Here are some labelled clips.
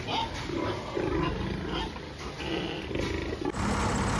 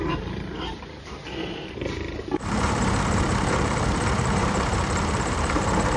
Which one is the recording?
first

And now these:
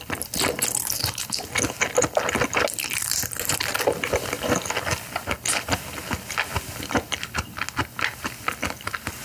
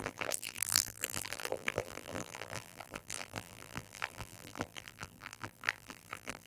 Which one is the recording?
first